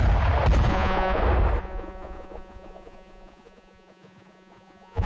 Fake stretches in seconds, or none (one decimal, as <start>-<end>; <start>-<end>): 0.7-1.2; 1.6-5.1